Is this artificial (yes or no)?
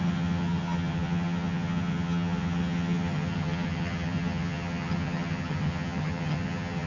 yes